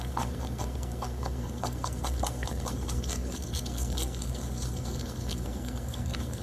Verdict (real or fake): fake